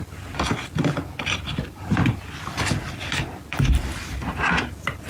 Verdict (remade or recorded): recorded